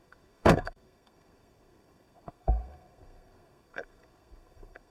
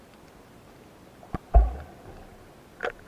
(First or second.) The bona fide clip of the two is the second